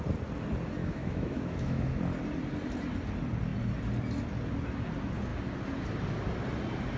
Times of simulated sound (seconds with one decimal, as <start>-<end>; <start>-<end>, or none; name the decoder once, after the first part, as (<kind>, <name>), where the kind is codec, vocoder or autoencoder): 0.8-2.0 (autoencoder, DAC-VAE)